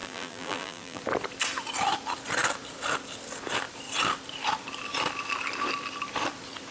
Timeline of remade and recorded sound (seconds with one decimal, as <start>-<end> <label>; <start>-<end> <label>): 0.0-1.0 remade; 1.0-6.7 recorded